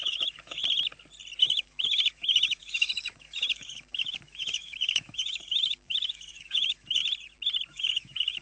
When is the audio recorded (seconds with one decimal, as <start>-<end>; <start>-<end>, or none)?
0.6-1.4; 7.0-7.7

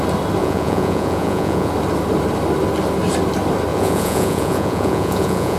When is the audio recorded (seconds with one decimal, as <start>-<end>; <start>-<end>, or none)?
0.0-0.4; 1.7-3.7

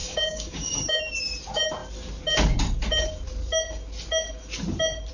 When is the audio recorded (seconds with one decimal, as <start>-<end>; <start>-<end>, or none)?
1.0-5.1